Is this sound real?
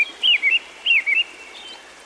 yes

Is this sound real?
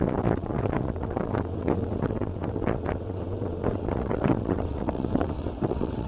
no